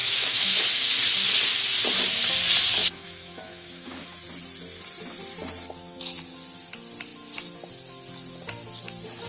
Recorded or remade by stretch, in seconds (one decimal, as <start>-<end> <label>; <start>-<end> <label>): 0.0-0.6 remade; 0.6-2.8 recorded; 2.8-4.2 remade; 4.2-9.3 recorded